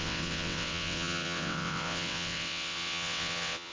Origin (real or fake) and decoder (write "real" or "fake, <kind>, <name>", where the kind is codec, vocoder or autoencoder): fake, vocoder, WaveNeXt